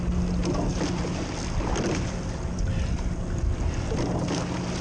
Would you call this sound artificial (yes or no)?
no